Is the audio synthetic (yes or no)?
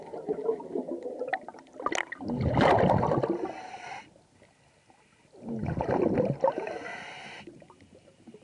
no